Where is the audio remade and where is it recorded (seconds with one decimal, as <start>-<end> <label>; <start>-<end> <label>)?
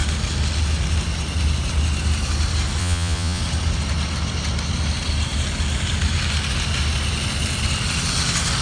0.0-2.8 recorded; 2.8-3.4 remade; 3.4-8.6 recorded